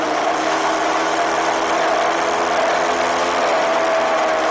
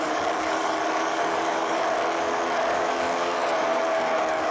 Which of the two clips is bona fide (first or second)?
first